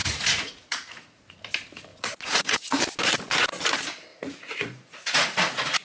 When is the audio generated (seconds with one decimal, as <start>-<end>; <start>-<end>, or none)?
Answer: 0.0-1.2; 1.9-2.8; 4.1-5.8